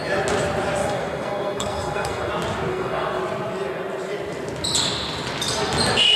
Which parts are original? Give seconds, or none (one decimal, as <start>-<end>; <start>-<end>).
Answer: 0.0-0.8; 2.3-2.7; 3.2-6.2